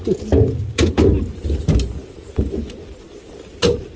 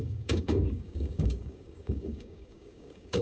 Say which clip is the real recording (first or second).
first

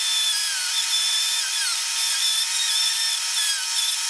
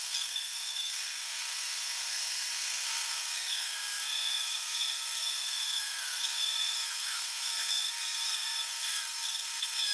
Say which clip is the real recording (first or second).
first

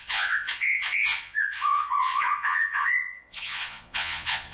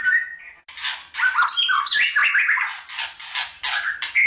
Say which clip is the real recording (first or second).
second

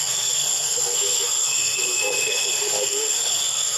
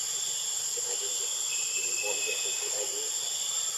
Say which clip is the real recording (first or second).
second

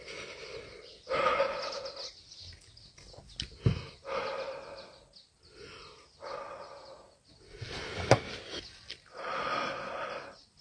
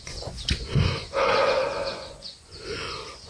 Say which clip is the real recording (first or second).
first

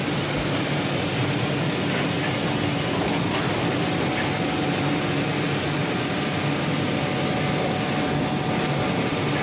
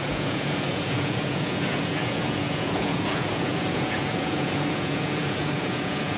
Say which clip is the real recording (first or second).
first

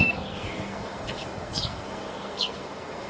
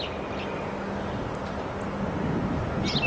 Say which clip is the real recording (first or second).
second